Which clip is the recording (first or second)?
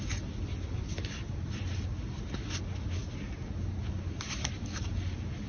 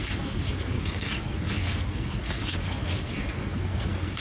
first